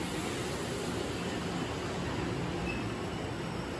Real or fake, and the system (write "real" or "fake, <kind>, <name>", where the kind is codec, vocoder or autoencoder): real